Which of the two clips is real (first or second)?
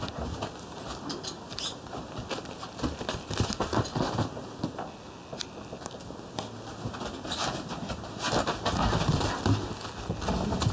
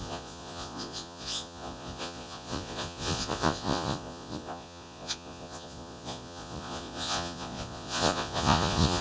first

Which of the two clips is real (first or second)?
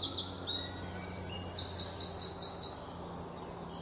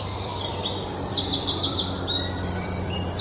first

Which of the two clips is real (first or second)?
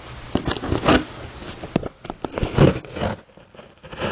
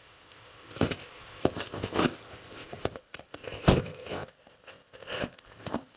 first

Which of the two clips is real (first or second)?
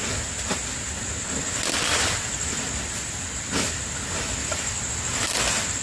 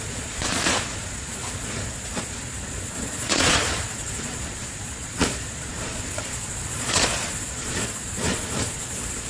first